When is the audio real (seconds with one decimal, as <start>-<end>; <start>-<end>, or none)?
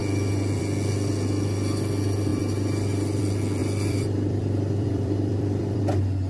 0.0-2.3; 3.2-3.6; 5.8-6.3